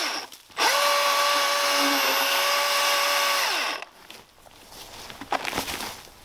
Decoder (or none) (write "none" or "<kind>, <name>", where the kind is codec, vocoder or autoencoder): none